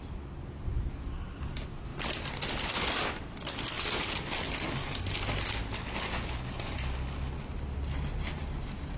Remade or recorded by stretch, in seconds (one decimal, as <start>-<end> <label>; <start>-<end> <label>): 0.0-9.0 recorded

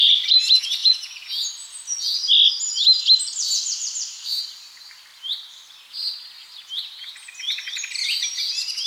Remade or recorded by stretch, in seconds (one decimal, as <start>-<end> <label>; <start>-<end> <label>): 0.0-0.8 remade; 0.8-3.0 recorded; 3.0-8.9 remade